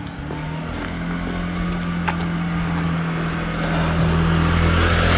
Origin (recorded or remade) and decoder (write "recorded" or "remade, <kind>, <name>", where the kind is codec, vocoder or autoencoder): recorded